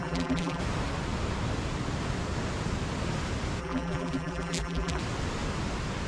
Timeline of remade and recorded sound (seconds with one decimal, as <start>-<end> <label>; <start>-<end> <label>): 0.0-0.6 remade; 0.6-3.6 recorded; 3.6-5.0 remade; 5.0-6.1 recorded